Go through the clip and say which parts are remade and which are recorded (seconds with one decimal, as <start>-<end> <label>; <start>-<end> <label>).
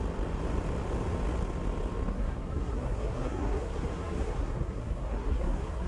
0.0-2.1 recorded; 2.1-5.9 remade